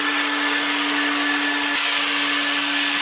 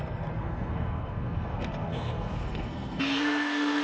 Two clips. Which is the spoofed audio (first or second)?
second